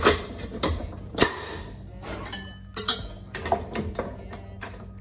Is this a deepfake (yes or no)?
no